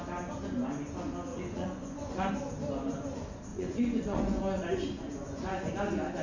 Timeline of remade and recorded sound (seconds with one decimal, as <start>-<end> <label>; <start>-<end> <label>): 0.0-1.3 recorded; 1.3-2.3 remade; 2.3-3.5 recorded; 3.5-5.7 remade; 5.7-6.2 recorded